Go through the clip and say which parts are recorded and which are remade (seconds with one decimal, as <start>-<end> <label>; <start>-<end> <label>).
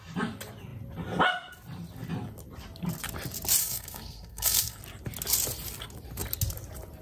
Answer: 0.0-3.6 recorded; 3.6-4.8 remade; 4.8-7.0 recorded